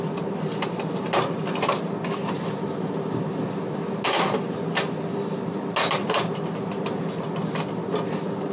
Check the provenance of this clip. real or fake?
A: real